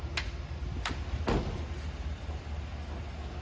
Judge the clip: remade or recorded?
recorded